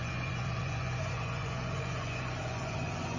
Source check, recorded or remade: remade